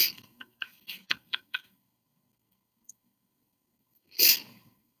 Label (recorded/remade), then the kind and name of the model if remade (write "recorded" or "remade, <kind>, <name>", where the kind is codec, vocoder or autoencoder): remade, codec, SNAC